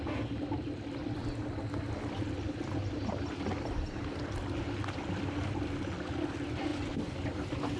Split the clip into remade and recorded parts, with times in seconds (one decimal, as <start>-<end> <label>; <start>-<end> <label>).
0.0-6.7 recorded; 6.7-7.8 remade